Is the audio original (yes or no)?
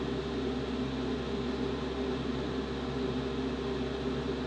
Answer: yes